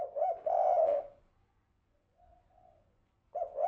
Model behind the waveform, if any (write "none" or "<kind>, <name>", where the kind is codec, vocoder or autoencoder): vocoder, Vocos